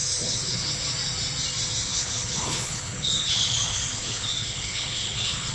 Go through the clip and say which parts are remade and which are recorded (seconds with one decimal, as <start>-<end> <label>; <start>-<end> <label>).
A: 0.0-0.7 remade; 0.7-1.9 recorded; 1.9-5.5 remade